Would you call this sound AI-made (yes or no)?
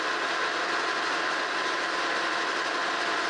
no